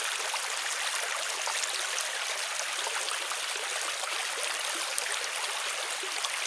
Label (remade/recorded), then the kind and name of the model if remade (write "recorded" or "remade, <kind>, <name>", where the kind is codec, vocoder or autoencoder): recorded